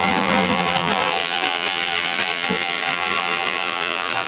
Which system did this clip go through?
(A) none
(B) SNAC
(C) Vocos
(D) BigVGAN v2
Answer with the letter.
D